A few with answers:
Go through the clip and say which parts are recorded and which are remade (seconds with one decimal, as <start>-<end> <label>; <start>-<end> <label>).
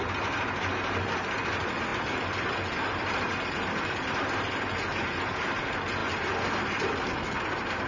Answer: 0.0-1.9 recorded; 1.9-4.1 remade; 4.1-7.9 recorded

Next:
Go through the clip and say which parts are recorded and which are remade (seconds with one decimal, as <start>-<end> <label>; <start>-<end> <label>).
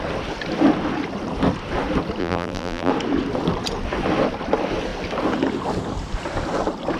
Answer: 0.0-2.2 recorded; 2.2-2.9 remade; 2.9-7.0 recorded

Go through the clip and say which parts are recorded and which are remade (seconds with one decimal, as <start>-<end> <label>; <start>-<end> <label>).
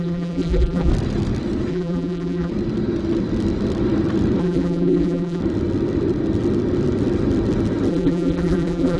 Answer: 0.0-0.9 remade; 0.9-1.7 recorded; 1.7-2.5 remade; 2.5-4.4 recorded; 4.4-5.4 remade; 5.4-7.9 recorded; 7.9-9.0 remade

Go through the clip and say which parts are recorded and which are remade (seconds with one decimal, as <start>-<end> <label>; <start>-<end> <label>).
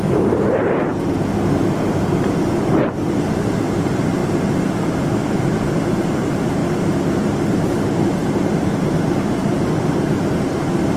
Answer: 0.0-0.9 remade; 0.9-2.0 recorded; 2.0-6.6 remade; 6.6-7.4 recorded; 7.4-11.0 remade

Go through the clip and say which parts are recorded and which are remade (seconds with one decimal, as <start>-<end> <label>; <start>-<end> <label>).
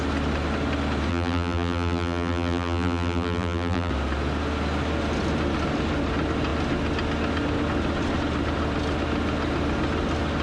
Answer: 0.0-1.1 recorded; 1.1-3.9 remade; 3.9-10.4 recorded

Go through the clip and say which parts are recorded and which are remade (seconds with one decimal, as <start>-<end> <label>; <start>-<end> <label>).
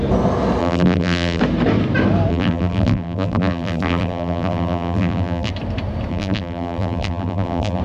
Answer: 0.0-0.6 recorded; 0.6-1.4 remade; 1.4-2.3 recorded; 2.3-5.5 remade; 5.5-6.1 recorded; 6.1-7.8 remade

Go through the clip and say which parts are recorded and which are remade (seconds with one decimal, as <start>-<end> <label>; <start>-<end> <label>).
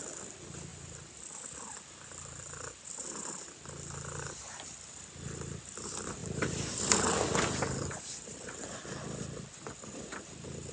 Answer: 0.0-6.2 recorded; 6.2-6.7 remade; 6.7-10.7 recorded